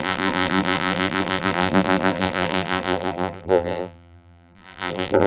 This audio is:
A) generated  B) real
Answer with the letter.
A